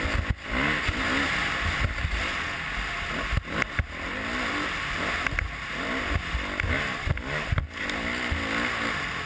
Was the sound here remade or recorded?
recorded